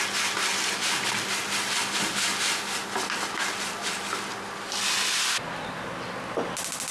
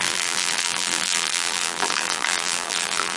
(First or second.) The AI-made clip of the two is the second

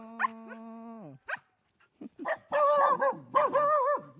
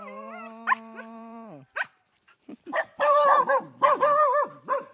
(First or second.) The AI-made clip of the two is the second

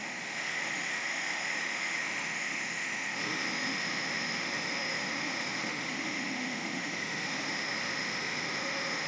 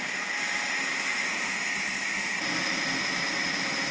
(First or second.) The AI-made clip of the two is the first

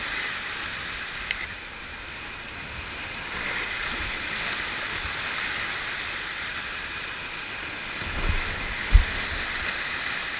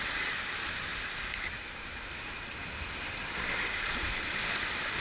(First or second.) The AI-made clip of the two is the second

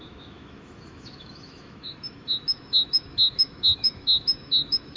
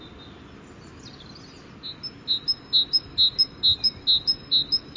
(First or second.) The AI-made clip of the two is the first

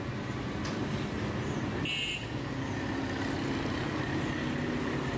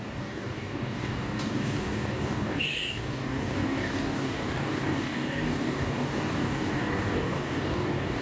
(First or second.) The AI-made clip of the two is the second